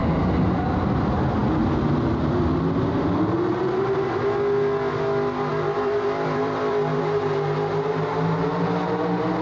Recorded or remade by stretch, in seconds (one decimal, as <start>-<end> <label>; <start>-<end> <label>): 0.0-5.5 recorded; 5.5-7.0 remade; 7.0-9.4 recorded